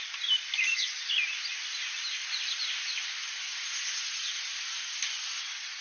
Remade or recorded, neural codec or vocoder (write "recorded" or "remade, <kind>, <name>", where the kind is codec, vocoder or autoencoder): recorded